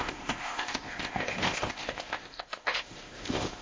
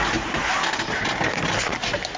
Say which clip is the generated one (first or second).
first